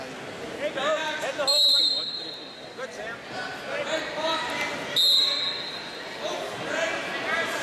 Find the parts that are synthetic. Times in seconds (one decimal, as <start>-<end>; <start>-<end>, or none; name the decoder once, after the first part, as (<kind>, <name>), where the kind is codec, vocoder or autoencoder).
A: none